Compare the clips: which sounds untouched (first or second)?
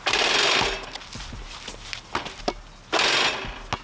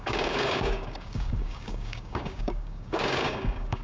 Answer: first